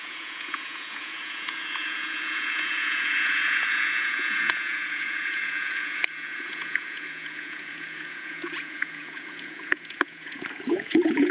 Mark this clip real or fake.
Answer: fake